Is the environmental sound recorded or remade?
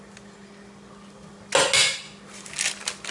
recorded